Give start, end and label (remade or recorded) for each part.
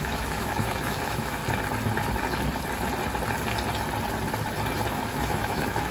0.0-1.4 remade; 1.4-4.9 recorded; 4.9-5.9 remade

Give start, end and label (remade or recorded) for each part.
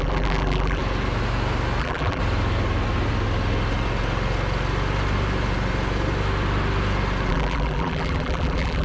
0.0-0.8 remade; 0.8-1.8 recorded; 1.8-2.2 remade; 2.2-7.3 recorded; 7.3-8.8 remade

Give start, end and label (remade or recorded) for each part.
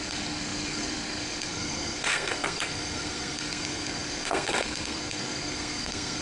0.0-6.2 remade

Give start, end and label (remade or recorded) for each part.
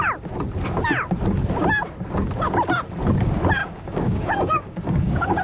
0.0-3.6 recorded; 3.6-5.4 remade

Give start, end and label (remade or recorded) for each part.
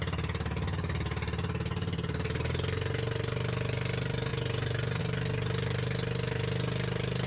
0.0-7.3 recorded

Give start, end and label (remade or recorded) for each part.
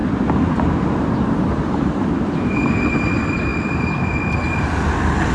0.0-1.4 recorded; 1.4-5.3 remade